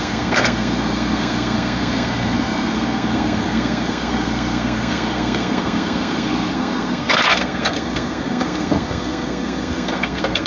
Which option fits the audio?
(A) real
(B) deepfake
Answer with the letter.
B